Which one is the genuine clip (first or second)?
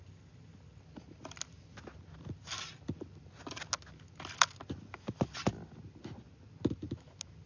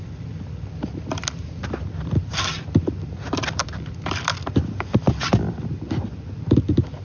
first